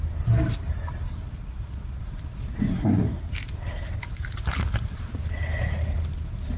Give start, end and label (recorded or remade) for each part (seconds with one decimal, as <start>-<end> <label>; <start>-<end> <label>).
0.0-2.7 recorded; 2.7-3.3 remade; 3.3-6.6 recorded